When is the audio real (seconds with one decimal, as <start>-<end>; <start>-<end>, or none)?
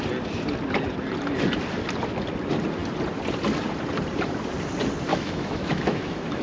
0.0-5.1